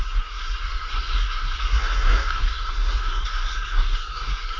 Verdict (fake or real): fake